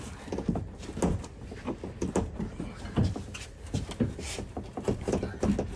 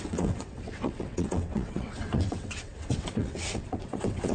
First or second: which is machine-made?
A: second